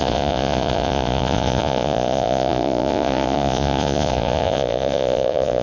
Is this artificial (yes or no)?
yes